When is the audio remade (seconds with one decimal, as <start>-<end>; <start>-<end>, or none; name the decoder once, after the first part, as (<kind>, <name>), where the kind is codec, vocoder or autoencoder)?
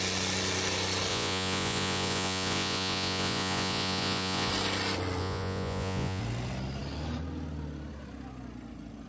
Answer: 1.1-4.5 (vocoder, Vocos); 5.2-6.2